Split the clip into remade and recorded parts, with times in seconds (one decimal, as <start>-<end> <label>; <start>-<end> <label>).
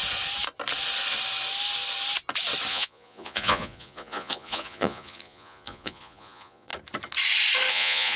0.0-2.7 recorded; 2.7-6.7 remade; 6.7-7.7 recorded; 7.7-8.2 remade